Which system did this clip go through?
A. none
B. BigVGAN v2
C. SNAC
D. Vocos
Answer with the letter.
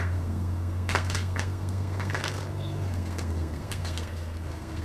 C